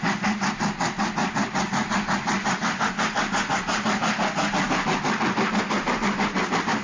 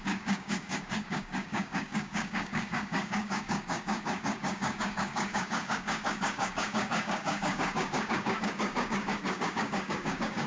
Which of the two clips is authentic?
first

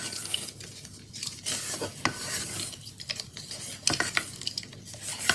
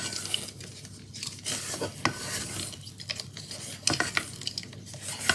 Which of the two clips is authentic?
second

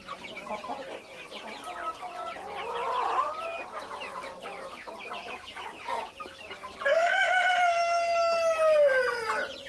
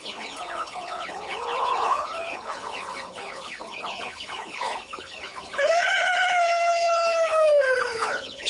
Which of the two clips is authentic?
first